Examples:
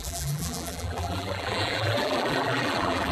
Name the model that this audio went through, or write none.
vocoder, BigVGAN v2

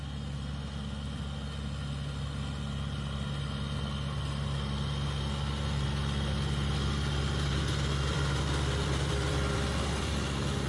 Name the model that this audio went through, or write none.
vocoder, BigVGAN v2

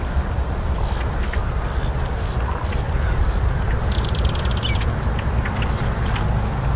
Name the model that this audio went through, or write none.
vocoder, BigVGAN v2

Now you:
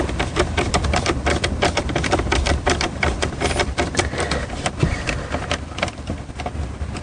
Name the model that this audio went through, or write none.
vocoder, BigVGAN v2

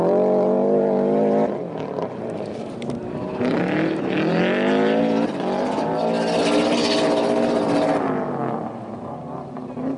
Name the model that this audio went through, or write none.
none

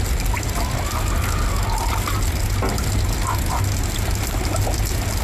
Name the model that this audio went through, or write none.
none